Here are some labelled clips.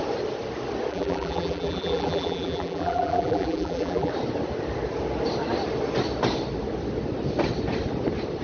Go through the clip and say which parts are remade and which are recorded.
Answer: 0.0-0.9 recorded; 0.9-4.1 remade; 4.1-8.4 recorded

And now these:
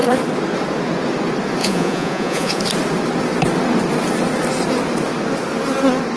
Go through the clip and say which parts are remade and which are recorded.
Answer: 0.0-1.6 recorded; 1.6-2.6 remade; 2.6-6.2 recorded

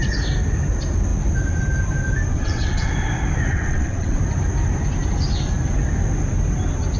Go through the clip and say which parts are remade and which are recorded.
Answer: 0.0-2.3 recorded; 2.3-2.9 remade; 2.9-3.5 recorded; 3.5-4.2 remade; 4.2-7.0 recorded

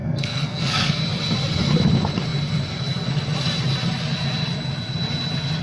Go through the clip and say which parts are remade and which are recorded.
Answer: 0.0-1.0 remade; 1.0-5.6 recorded